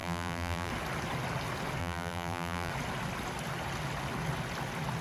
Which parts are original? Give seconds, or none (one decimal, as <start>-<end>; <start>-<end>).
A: 0.7-1.8; 2.7-5.0